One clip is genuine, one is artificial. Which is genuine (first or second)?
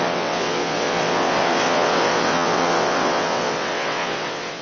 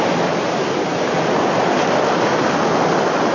second